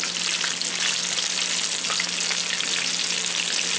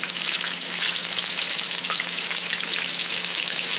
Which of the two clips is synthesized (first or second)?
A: second